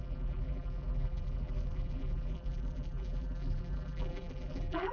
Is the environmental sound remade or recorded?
remade